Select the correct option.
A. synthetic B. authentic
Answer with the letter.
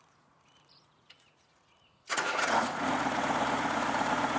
A